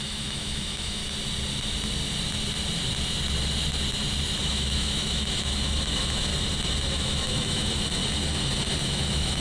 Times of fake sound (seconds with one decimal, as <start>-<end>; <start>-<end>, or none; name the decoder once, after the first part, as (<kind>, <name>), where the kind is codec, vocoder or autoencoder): 0.0-1.0 (autoencoder, DAC-VAE); 4.4-6.3; 6.9-8.0; 8.8-9.4